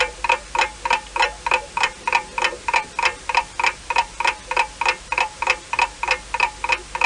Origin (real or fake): real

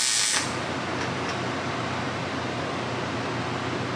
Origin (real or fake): real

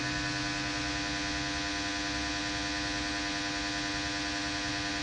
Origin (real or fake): real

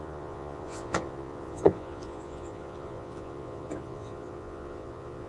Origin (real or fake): fake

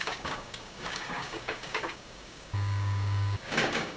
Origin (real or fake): fake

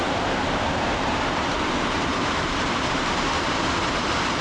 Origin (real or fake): fake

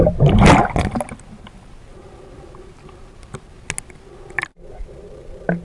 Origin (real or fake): real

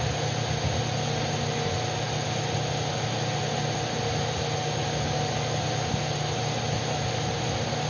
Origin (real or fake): real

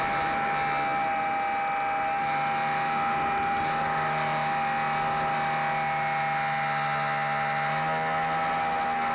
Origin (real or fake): real